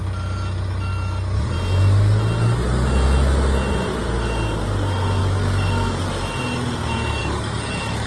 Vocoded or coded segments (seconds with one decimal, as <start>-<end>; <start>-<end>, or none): 5.2-6.0; 7.2-8.1